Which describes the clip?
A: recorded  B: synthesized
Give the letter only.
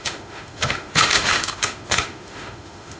B